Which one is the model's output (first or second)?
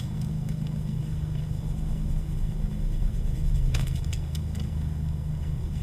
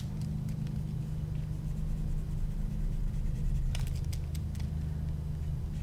first